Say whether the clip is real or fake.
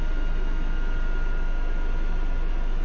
real